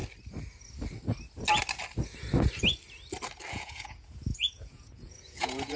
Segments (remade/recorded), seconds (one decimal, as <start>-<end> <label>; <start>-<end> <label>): 0.0-3.5 recorded; 3.5-5.8 remade